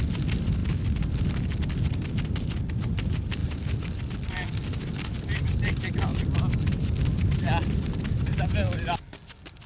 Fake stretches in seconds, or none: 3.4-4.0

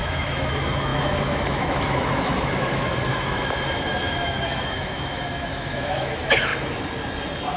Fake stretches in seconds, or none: 0.0-6.5

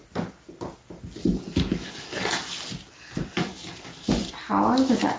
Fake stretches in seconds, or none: none

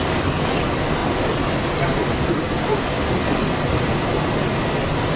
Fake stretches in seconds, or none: none

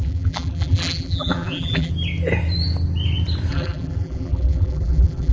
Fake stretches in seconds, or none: 0.0-1.9; 3.5-5.3